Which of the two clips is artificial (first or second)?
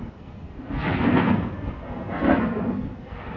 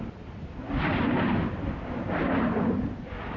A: first